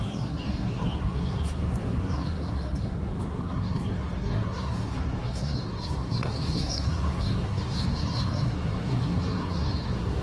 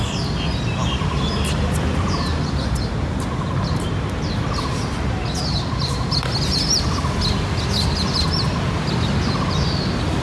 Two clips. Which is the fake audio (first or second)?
first